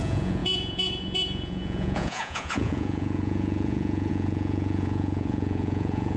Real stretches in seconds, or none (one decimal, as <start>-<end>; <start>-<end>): none